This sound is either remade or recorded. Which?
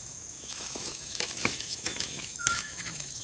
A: remade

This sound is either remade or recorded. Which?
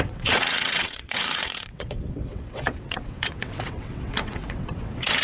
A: remade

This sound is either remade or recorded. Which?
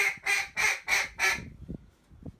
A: recorded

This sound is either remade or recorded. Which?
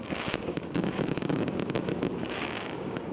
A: remade